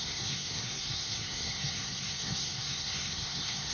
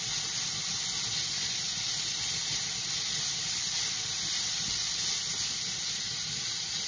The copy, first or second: first